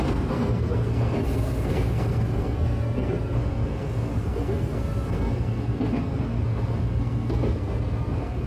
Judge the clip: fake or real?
fake